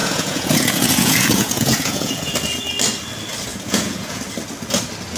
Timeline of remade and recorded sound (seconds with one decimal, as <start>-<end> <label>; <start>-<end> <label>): 0.0-2.3 remade; 2.3-3.5 recorded; 3.5-4.2 remade; 4.2-5.2 recorded